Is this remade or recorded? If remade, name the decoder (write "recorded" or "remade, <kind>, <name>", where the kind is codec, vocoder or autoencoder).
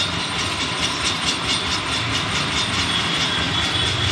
recorded